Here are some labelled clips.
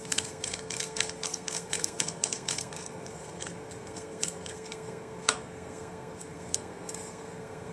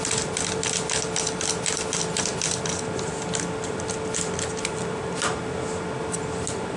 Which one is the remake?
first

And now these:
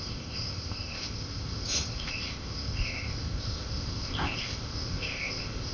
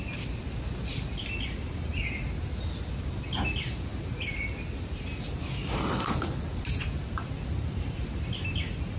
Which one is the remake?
first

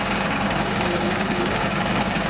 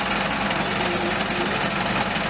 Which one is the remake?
first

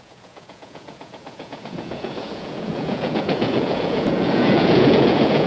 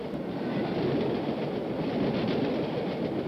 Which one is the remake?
first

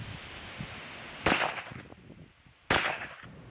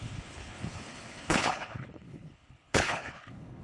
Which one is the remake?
second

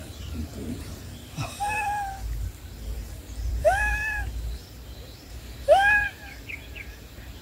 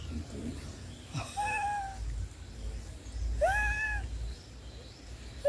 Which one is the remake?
first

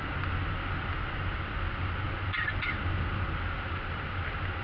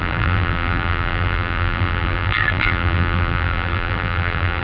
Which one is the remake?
second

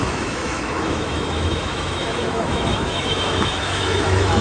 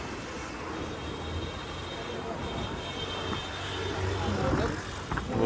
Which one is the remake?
first